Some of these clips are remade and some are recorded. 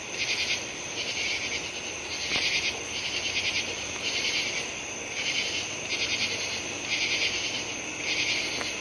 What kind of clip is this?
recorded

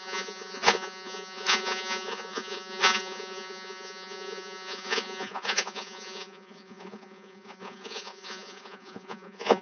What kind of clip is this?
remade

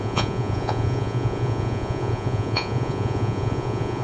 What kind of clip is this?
remade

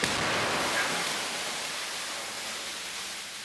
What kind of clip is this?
recorded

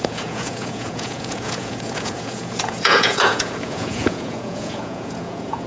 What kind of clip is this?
remade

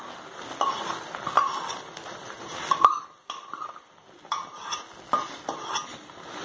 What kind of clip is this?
recorded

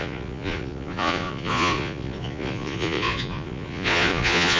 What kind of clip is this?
remade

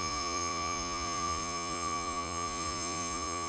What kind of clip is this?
remade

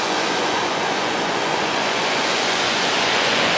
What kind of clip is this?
remade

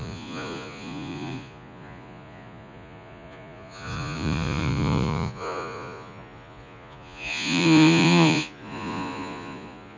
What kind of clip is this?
remade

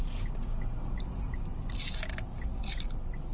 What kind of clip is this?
recorded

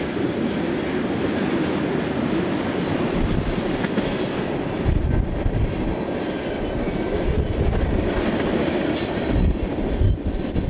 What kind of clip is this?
recorded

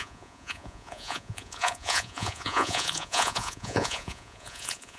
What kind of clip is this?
remade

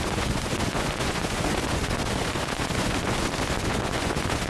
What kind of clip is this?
remade